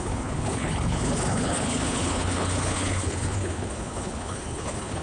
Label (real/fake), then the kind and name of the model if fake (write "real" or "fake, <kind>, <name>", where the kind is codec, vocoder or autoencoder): fake, codec, HILCodec